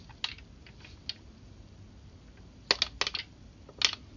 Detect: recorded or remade recorded